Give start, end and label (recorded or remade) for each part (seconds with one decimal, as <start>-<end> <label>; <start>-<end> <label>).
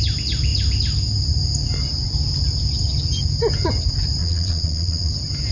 0.0-4.2 recorded; 4.2-5.1 remade; 5.1-5.5 recorded